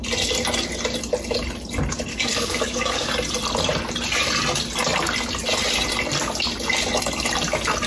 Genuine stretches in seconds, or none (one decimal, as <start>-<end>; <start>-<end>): 0.0-2.1; 3.1-7.9